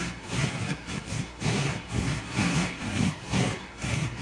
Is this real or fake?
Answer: fake